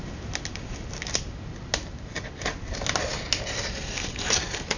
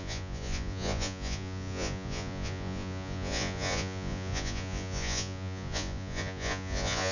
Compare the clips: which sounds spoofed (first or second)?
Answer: second